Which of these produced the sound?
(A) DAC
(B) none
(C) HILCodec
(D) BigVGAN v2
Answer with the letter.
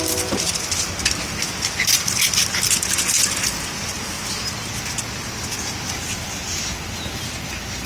B